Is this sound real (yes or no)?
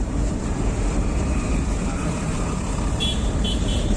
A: no